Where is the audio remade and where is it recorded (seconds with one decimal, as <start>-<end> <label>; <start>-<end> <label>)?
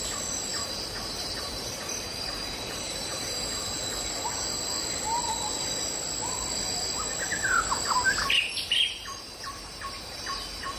0.0-0.5 recorded; 0.5-3.2 remade; 3.2-10.8 recorded